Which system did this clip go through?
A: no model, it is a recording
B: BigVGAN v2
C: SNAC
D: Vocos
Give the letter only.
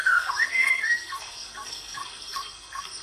C